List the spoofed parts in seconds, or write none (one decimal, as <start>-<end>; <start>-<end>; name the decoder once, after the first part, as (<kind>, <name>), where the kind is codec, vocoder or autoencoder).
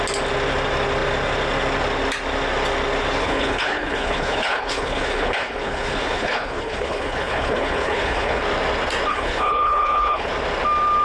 3.2-8.4 (codec, HILCodec); 9.1-10.3